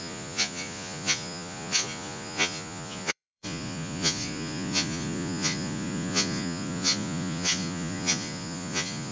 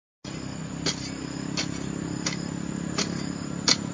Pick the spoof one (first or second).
first